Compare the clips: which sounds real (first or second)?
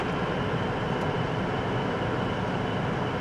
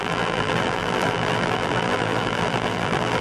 first